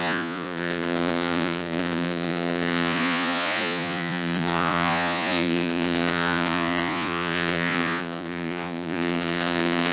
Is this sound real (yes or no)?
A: no